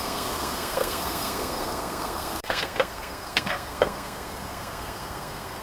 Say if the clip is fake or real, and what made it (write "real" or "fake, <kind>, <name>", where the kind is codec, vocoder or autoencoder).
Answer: fake, codec, SNAC